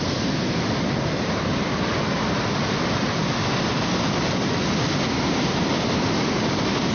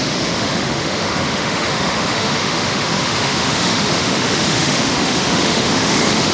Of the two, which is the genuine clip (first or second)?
first